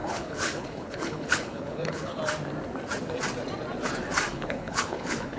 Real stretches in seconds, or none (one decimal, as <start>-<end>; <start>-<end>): 2.2-4.3